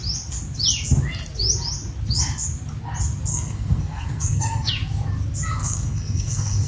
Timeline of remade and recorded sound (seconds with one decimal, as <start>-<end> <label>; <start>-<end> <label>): 0.0-3.3 recorded; 3.3-4.7 remade; 4.7-5.6 recorded; 5.6-6.7 remade